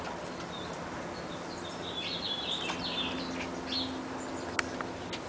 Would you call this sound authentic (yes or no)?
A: yes